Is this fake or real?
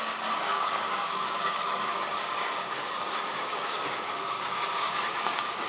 fake